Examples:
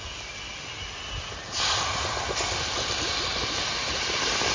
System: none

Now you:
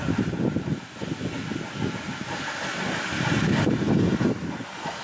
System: none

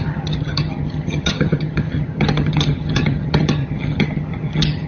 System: vocoder, HiFi-GAN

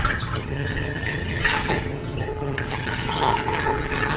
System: vocoder, HiFi-GAN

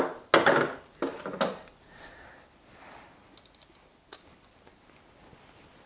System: none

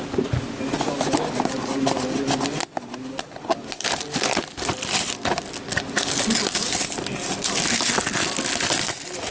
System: none